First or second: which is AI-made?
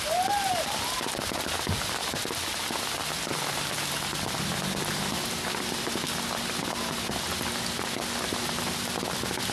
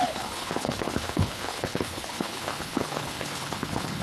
second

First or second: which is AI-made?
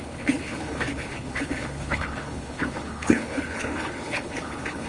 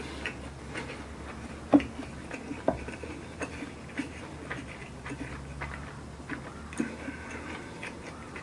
first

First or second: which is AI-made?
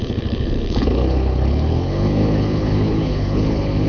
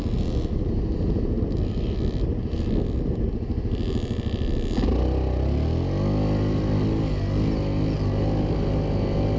first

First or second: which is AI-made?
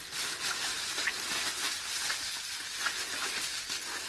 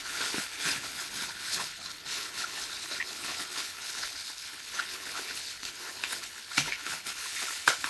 second